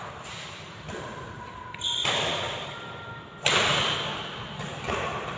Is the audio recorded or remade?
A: recorded